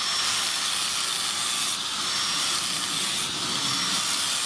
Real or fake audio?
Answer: real